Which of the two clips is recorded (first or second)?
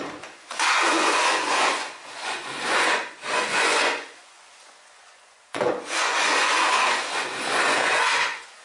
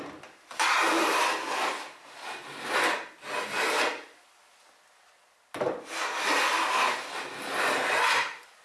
second